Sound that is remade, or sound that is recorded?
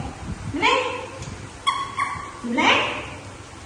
remade